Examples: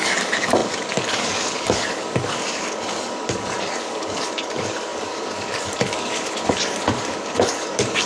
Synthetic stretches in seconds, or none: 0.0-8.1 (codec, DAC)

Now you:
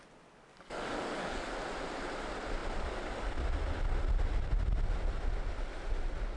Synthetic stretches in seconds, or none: 0.5-1.5 (codec, DAC)